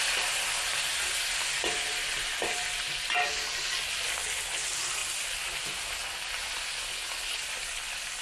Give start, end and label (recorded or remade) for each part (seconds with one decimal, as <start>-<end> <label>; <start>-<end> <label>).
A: 0.0-6.9 recorded; 6.9-7.4 remade; 7.4-8.2 recorded